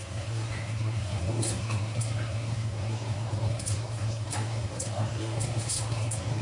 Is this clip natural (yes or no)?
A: no